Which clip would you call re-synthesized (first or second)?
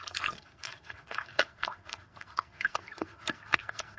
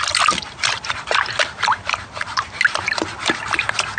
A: first